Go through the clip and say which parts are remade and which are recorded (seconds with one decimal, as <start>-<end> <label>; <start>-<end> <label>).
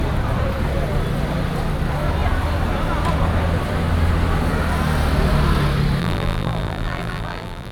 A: 0.0-6.0 recorded; 6.0-7.7 remade